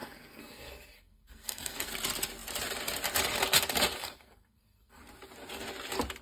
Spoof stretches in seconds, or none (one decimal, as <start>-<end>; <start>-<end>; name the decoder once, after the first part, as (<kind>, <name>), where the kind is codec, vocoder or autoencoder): 0.0-1.9 (codec, SNAC); 4.0-5.0